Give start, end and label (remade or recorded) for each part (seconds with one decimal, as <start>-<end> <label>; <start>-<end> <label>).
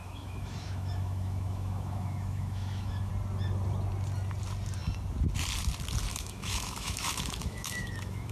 0.0-3.1 remade; 3.1-6.1 recorded; 6.1-8.3 remade